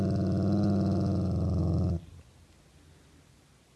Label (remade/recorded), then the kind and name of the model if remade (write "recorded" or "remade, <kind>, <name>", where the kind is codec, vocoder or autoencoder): recorded